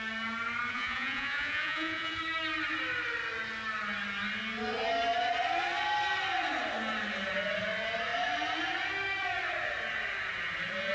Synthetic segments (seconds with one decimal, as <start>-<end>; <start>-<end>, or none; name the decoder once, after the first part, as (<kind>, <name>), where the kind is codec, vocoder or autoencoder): 0.7-2.2 (vocoder, Vocos)